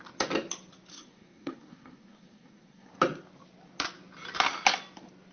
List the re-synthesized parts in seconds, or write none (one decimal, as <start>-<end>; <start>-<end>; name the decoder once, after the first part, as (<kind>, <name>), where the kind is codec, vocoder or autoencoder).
0.9-2.9 (codec, SNAC)